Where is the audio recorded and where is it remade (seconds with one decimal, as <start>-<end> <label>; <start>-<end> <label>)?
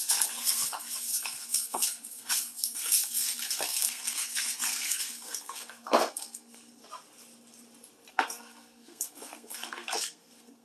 0.0-6.8 remade; 6.8-8.1 recorded; 8.1-10.6 remade